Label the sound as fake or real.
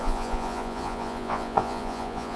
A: fake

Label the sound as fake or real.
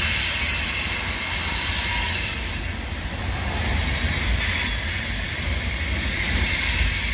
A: real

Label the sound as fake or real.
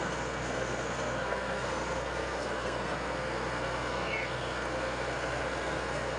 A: fake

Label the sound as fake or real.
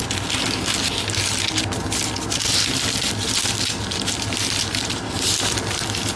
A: real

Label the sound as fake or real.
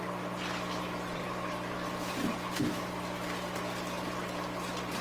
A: fake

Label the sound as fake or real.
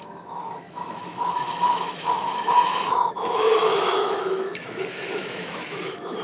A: fake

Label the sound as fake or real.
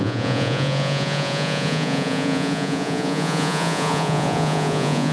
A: fake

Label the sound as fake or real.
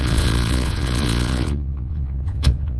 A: fake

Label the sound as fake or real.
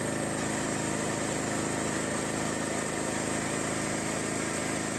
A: real